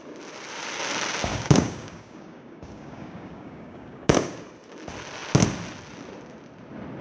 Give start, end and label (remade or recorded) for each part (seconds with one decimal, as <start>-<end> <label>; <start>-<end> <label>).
0.0-1.3 recorded; 1.3-4.4 remade; 4.4-7.0 recorded